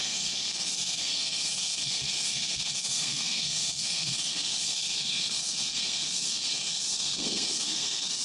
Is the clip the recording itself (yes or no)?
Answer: no